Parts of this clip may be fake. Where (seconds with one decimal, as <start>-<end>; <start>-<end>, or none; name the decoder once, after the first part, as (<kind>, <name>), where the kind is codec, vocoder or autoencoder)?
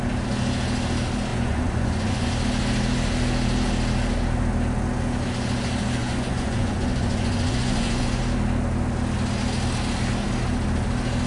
1.3-2.3 (vocoder, Vocos); 6.0-8.2